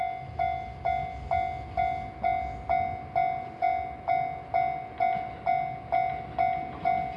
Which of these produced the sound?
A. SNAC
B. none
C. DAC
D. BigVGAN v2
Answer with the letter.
B